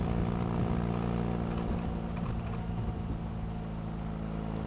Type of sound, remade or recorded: recorded